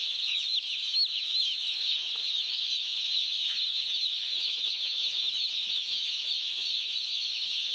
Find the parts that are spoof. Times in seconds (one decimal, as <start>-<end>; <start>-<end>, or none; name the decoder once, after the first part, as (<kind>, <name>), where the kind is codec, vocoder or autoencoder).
0.0-7.7 (autoencoder, DAC-VAE)